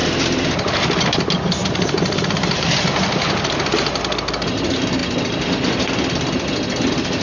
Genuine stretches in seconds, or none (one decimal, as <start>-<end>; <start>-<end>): 0.0-7.2